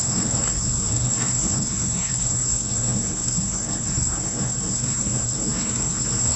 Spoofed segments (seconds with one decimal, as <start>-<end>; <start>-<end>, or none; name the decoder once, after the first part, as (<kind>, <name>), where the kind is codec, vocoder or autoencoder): 0.0-6.4 (codec, SNAC)